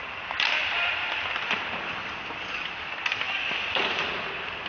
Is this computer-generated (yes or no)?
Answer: yes